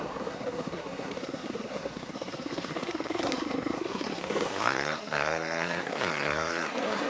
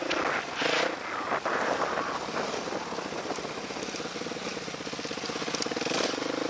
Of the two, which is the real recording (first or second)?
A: second